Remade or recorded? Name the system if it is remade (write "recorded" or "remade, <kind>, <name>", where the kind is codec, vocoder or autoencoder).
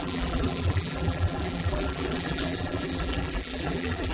remade, vocoder, BigVGAN v2